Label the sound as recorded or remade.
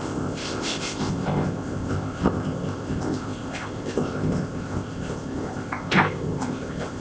remade